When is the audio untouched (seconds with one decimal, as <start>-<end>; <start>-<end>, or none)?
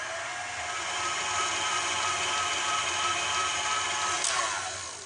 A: 0.0-1.7; 2.3-5.1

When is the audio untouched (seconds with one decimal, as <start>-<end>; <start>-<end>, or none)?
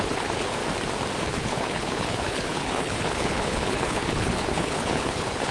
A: 0.6-1.2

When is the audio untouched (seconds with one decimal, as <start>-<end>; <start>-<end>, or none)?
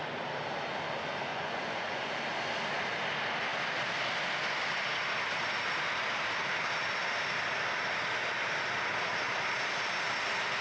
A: 0.0-1.3; 2.1-10.6